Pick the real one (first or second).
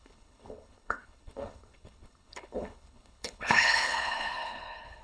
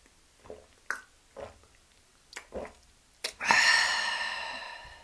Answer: second